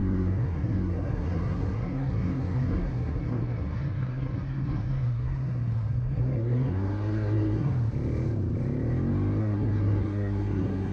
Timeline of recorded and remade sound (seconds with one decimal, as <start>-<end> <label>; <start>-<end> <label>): 0.0-7.7 remade; 7.7-9.4 recorded; 9.4-10.9 remade